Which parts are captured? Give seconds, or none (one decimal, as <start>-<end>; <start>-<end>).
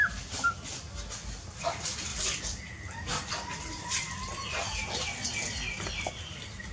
0.0-6.7